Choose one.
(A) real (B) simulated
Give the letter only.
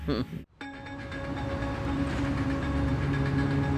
A